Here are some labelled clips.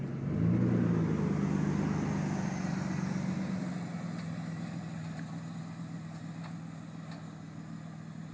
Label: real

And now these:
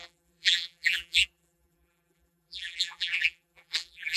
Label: fake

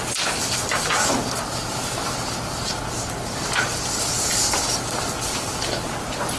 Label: real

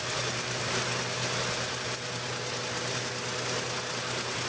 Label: real